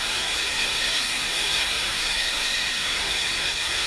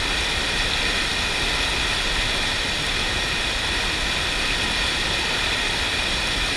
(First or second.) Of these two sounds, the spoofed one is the first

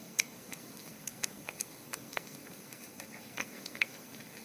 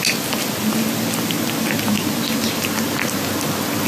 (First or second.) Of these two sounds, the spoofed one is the first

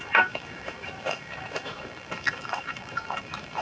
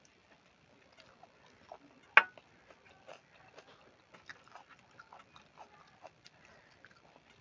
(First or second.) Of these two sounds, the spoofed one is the first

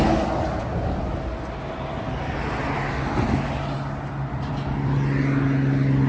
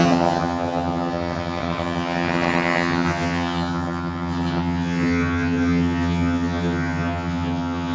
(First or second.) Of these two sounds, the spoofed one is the second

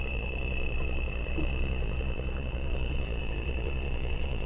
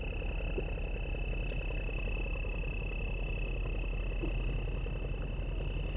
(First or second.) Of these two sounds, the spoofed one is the first